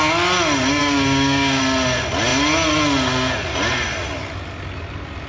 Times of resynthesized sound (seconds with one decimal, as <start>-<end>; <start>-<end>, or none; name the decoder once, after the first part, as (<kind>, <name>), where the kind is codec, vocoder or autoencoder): 0.8-1.6 (codec, DAC)